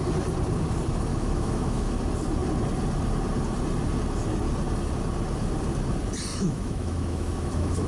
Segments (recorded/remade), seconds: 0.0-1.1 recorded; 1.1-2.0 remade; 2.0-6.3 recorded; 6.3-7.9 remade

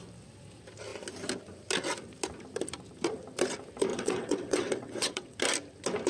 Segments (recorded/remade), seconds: 0.0-3.9 recorded; 3.9-5.4 remade; 5.4-6.1 recorded

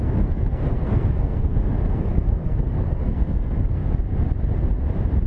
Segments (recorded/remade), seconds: 0.0-3.8 remade; 3.8-5.3 recorded